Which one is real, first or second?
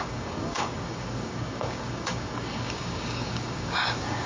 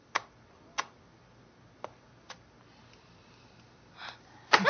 second